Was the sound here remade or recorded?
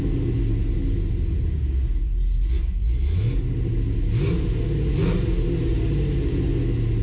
recorded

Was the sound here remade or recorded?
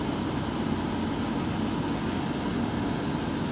recorded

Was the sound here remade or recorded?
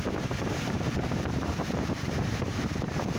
remade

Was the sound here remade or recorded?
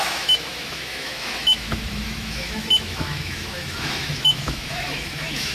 remade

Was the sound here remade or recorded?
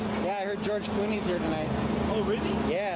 recorded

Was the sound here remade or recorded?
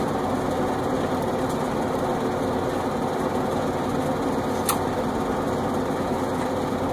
recorded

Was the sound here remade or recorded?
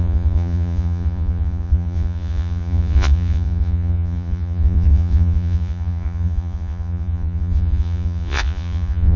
remade